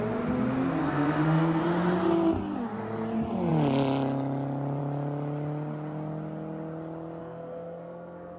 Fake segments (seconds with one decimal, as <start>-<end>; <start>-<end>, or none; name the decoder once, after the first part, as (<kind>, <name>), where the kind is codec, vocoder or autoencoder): 0.8-1.6 (codec, SNAC); 7.2-8.4